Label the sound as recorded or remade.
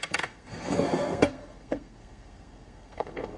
remade